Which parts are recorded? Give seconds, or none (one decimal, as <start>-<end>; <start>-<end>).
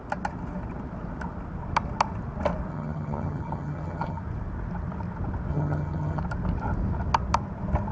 0.0-2.7; 4.2-5.5; 6.2-7.9